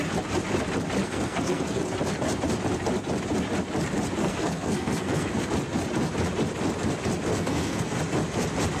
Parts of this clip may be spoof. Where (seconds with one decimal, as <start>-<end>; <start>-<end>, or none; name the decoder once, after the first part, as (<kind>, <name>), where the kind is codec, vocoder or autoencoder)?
1.0-1.8 (codec, SNAC); 4.2-5.5; 7.3-8.0

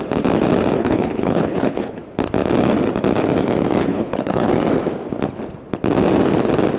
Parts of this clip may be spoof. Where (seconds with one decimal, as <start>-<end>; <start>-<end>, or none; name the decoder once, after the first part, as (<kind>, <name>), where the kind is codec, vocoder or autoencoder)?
0.8-2.0 (codec, HILCodec); 3.8-4.5

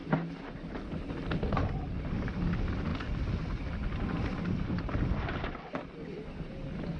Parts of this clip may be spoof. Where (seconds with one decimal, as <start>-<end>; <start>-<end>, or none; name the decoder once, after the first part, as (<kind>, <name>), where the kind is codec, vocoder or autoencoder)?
none

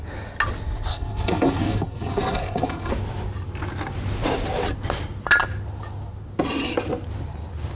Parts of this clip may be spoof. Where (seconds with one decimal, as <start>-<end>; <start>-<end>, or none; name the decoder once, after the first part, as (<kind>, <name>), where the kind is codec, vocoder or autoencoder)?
0.9-2.9 (codec, SNAC)

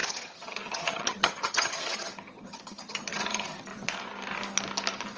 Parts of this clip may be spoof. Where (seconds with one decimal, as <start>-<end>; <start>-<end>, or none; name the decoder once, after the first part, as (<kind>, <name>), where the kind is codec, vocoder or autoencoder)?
0.0-3.7 (vocoder, HiFi-GAN)

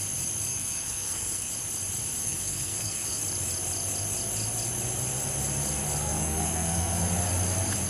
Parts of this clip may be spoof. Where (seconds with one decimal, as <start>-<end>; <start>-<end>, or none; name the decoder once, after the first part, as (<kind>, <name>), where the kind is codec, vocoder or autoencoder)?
0.5-1.5 (codec, SNAC); 2.2-3.2; 6.0-7.0

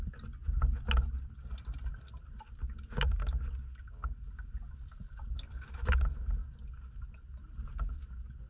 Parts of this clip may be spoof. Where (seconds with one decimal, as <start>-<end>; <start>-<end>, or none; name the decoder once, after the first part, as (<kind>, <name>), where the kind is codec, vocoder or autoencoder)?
none

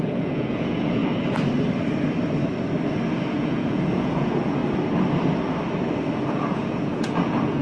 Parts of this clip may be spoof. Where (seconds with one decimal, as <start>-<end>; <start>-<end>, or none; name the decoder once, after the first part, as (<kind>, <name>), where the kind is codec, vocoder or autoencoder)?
0.0-1.0 (vocoder, Vocos); 3.3-4.6; 6.3-7.6